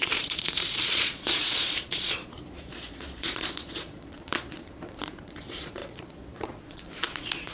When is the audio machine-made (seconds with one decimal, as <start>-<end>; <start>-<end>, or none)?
0.0-7.5